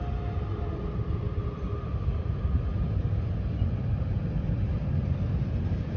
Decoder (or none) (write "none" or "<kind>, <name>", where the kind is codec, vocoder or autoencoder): none